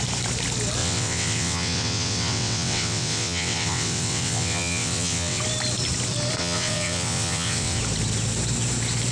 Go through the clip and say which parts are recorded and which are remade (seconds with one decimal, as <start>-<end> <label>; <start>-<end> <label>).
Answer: 0.0-0.8 recorded; 0.8-5.4 remade; 5.4-6.4 recorded; 6.4-7.8 remade; 7.8-9.1 recorded